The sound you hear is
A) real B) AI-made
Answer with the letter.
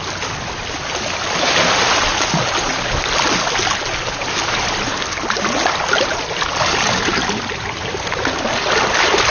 A